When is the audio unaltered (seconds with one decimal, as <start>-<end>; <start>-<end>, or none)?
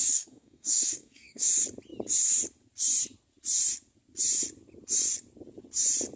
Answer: 1.5-6.2